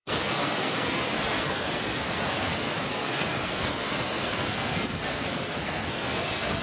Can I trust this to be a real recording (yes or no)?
no